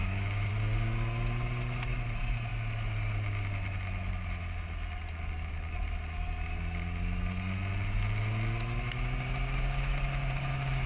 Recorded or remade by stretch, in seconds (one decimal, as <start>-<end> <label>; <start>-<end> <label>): 0.0-0.5 remade; 0.5-10.9 recorded